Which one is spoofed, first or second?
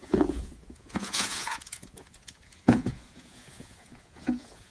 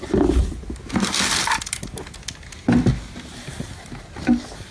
first